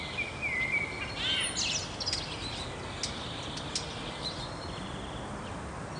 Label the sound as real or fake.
real